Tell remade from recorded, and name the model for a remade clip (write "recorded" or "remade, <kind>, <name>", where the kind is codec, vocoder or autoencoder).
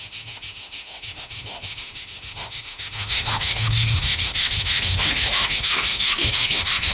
remade, autoencoder, DAC-VAE